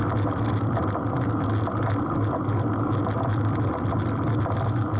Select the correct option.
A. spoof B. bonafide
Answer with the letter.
B